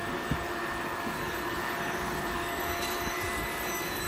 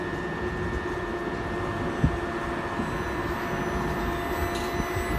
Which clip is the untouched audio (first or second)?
second